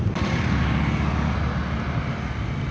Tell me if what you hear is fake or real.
real